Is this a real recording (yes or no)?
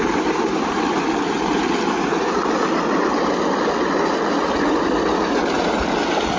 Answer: yes